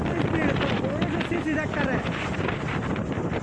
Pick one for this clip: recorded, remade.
recorded